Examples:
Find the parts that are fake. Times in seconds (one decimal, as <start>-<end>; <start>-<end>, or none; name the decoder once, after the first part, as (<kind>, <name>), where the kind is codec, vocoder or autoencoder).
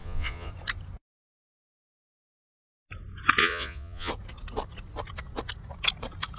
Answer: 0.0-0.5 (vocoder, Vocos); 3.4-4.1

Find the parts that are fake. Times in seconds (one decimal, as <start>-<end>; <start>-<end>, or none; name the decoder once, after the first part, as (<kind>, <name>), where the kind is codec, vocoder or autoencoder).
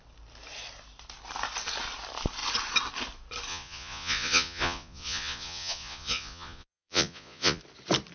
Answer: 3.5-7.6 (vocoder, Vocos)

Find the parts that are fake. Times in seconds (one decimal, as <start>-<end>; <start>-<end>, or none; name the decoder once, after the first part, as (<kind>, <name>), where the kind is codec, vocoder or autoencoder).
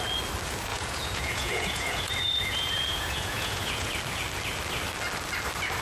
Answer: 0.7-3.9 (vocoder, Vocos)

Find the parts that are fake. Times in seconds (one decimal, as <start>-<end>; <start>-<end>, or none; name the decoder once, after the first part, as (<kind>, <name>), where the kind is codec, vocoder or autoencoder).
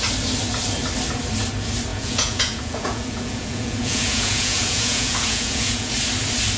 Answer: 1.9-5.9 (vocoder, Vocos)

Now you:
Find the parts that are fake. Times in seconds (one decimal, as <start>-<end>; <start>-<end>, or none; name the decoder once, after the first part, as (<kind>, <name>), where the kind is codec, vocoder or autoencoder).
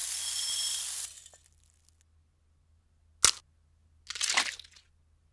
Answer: none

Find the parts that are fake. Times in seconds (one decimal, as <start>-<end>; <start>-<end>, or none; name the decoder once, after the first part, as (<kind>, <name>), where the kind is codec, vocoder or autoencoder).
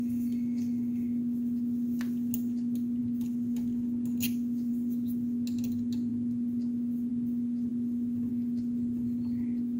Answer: none